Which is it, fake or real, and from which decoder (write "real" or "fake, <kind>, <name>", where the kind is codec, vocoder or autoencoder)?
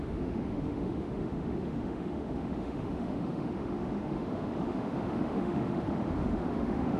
fake, autoencoder, DAC-VAE